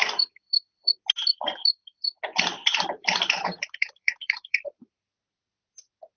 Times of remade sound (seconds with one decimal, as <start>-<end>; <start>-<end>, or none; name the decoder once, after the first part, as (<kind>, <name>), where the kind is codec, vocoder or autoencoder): 0.0-0.9 (vocoder, BigVGAN v2); 1.7-2.2; 3.0-5.0